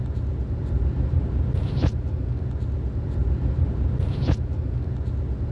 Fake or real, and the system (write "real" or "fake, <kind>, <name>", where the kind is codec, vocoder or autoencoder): real